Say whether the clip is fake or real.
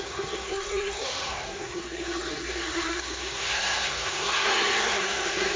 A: fake